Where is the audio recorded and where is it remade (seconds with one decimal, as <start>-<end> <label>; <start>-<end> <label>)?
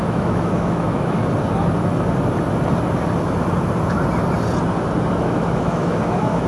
0.0-1.2 remade; 1.2-5.1 recorded; 5.1-6.5 remade